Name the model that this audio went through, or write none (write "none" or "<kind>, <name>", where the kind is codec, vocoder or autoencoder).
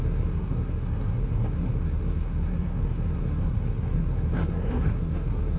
codec, SNAC